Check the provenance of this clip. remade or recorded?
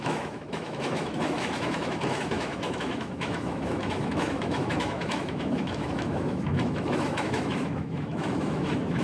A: remade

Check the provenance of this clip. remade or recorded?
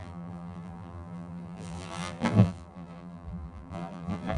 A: remade